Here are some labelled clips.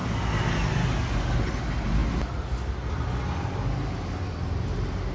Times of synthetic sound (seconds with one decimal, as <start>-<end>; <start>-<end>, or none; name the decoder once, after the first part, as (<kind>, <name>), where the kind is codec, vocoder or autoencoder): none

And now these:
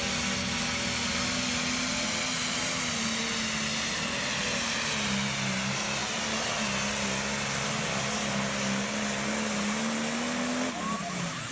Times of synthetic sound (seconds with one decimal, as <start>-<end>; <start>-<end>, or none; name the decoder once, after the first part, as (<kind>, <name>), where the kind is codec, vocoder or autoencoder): none

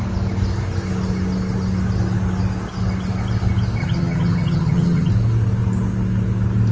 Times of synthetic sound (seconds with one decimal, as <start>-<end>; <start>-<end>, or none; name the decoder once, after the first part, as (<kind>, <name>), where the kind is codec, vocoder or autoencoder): 3.8-5.1 (vocoder, HiFi-GAN)

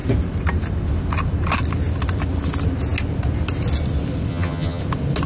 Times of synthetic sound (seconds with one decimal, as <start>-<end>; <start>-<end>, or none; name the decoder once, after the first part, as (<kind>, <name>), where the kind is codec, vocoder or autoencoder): 4.3-4.8 (vocoder, HiFi-GAN)

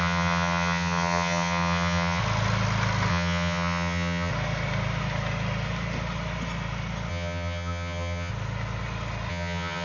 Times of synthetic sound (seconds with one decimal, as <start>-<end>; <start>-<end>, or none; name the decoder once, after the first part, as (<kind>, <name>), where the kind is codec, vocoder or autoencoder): 0.0-2.2 (vocoder, HiFi-GAN); 3.1-4.3; 7.1-8.3; 9.3-9.8

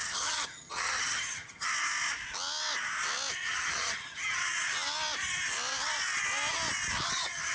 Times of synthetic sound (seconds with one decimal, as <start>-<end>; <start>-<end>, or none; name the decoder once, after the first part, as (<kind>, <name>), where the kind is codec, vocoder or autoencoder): 0.0-1.7 (vocoder, HiFi-GAN); 3.3-4.4; 7.1-7.5

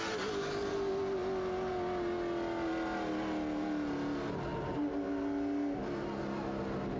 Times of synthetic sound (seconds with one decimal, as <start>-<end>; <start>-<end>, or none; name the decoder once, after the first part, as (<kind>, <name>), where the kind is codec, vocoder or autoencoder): none